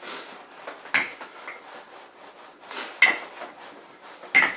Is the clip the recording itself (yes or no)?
yes